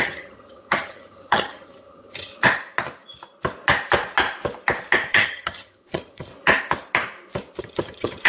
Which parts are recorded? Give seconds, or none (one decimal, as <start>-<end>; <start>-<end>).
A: 2.3-5.1; 6.3-7.6